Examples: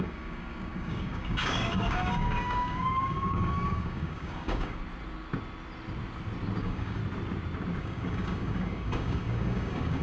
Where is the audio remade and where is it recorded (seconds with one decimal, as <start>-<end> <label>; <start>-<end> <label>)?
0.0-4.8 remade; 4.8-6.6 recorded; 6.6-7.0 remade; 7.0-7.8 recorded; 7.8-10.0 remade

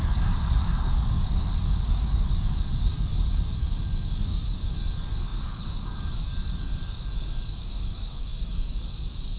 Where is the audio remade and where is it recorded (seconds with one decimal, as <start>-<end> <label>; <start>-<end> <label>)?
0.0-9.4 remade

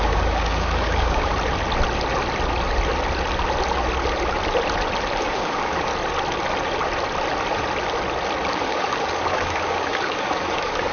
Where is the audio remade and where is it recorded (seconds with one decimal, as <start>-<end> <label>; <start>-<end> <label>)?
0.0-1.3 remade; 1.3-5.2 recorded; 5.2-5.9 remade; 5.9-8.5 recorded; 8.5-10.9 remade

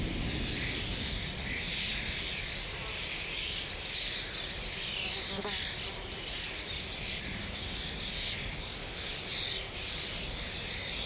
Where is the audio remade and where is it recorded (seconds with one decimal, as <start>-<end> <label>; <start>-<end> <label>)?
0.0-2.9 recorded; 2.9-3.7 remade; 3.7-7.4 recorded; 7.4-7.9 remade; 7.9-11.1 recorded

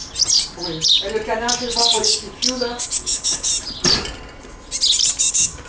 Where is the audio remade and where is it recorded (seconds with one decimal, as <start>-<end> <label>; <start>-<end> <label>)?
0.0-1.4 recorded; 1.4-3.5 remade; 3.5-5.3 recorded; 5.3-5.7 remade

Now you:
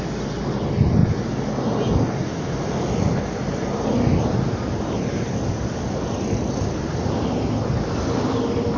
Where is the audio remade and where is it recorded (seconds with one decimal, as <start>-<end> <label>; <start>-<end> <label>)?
0.0-8.8 recorded

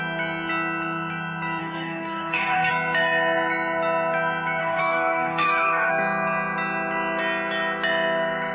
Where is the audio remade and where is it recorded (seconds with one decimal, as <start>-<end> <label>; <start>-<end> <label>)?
0.0-1.6 recorded; 1.6-2.7 remade; 2.7-4.6 recorded; 4.6-5.9 remade; 5.9-8.5 recorded